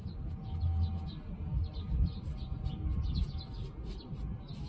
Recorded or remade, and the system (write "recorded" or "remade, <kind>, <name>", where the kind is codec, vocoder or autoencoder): recorded